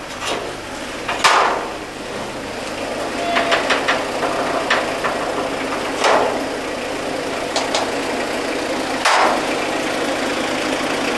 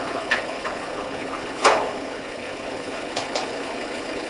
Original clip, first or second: first